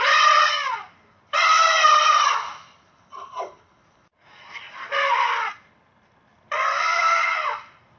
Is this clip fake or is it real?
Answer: fake